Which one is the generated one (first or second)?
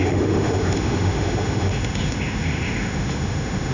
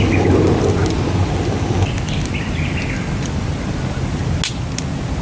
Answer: first